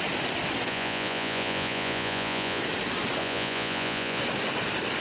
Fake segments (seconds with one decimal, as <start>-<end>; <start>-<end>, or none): 0.7-2.6; 3.2-4.2